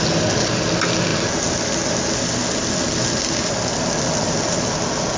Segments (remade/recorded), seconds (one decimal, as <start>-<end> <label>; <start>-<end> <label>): 0.0-5.2 recorded